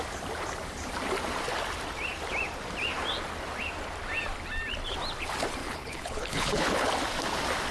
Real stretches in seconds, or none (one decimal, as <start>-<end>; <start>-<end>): 0.0-5.6; 6.9-7.7